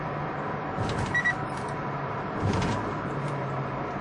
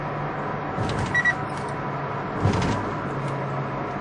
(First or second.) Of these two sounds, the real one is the second